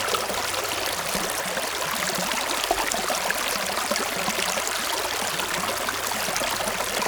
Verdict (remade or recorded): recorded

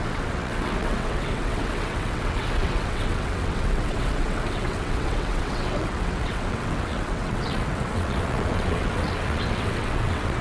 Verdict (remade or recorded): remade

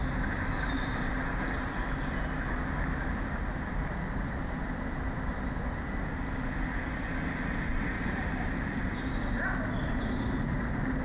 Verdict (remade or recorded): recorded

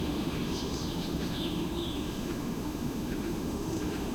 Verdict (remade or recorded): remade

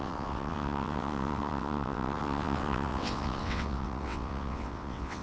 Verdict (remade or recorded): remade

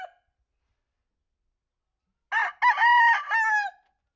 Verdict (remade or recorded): recorded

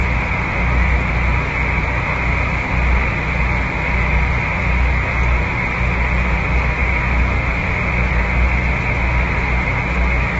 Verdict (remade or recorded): recorded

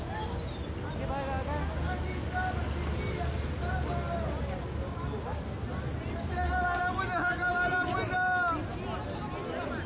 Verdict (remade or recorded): recorded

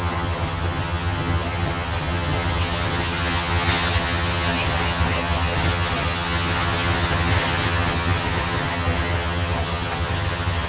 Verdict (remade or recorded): remade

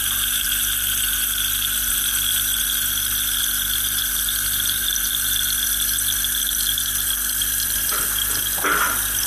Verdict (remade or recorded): recorded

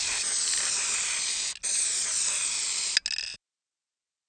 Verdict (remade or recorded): recorded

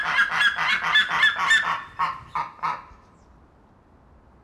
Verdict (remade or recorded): recorded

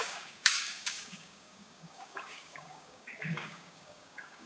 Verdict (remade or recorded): remade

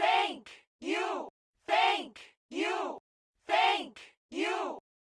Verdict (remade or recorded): recorded